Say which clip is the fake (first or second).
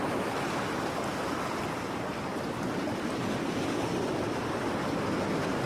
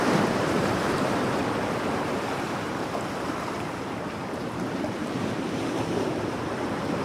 second